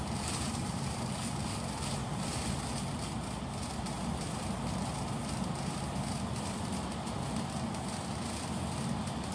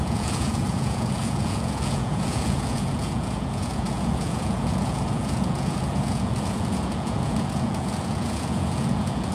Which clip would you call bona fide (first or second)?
first